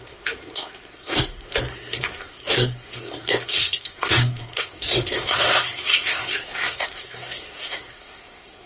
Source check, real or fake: fake